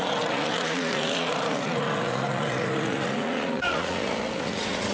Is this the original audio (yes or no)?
no